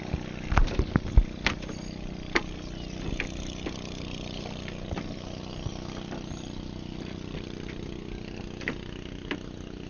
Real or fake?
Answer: real